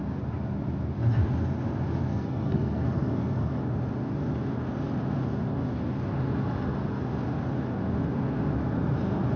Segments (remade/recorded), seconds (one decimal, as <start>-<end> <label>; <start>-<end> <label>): 0.0-2.1 recorded; 2.1-3.6 remade; 3.6-9.4 recorded